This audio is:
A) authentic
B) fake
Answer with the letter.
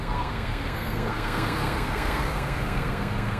B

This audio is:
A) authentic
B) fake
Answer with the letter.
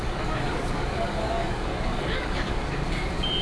B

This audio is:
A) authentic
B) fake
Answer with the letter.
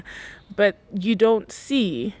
A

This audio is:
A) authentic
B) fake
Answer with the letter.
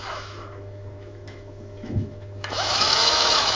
B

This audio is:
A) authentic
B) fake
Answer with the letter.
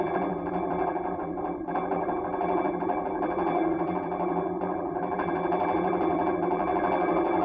B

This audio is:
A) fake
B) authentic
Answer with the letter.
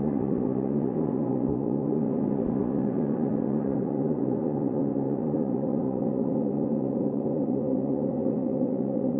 A